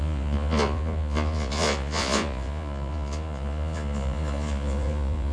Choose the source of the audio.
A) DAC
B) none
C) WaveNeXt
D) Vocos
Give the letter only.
D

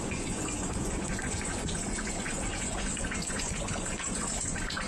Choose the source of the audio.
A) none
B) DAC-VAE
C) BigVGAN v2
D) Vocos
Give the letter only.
D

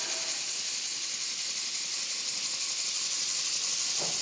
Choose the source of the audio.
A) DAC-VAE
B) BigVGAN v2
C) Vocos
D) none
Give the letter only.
D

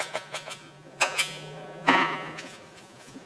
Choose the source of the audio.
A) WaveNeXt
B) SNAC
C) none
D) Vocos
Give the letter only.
D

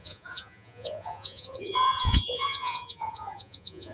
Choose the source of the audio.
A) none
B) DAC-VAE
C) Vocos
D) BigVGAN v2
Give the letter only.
C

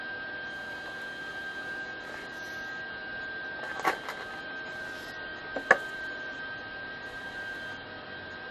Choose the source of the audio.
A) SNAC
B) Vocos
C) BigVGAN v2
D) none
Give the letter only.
D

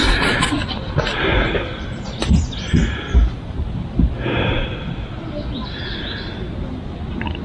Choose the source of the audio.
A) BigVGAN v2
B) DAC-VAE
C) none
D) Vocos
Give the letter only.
C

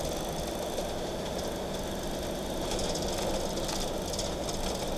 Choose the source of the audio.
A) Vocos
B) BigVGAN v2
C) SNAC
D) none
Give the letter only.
D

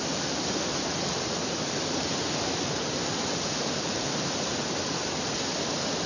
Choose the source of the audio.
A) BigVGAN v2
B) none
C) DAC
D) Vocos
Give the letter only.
B